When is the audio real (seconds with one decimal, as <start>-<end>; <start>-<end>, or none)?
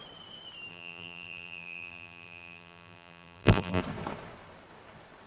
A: 0.0-0.7; 3.8-5.3